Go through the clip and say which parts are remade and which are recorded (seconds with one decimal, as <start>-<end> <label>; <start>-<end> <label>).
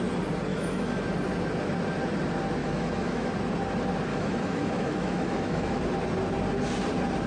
0.0-0.5 recorded; 0.5-1.0 remade; 1.0-2.6 recorded; 2.6-3.3 remade; 3.3-4.1 recorded; 4.1-5.8 remade; 5.8-7.3 recorded